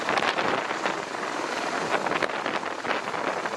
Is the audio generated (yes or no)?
no